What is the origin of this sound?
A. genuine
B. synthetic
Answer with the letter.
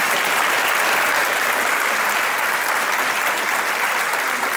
A